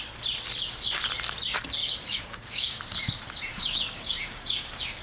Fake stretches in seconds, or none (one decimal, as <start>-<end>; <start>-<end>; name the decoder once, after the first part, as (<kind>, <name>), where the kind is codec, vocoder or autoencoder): 1.8-2.8 (codec, DAC); 3.5-5.0